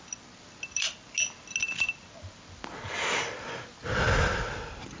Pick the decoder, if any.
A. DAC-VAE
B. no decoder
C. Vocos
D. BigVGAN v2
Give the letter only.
B